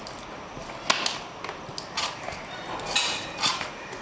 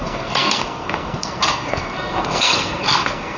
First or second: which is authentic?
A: first